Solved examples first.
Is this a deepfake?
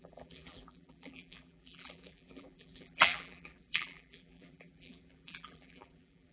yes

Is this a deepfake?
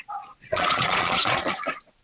yes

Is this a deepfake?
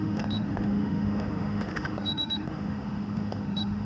yes